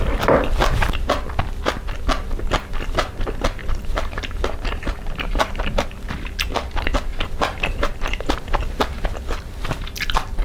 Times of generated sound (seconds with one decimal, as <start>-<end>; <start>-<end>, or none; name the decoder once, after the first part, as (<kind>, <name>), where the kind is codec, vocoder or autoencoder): 3.6-5.7 (vocoder, BigVGAN v2); 7.1-8.6